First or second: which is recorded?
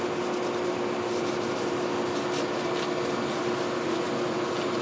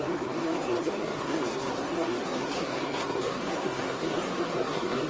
first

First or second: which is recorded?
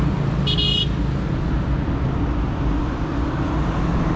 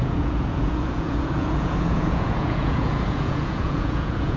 first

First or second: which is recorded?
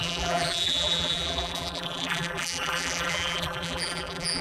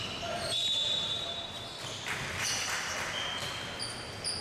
second